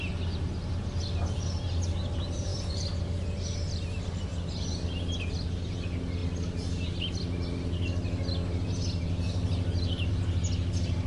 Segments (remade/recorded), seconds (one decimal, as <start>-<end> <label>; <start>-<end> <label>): 0.0-11.1 recorded